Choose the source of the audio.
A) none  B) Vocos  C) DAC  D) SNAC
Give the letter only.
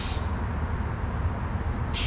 A